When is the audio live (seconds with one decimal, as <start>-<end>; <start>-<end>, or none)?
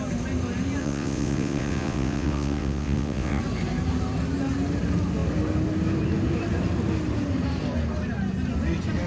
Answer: 0.0-0.8; 3.4-9.1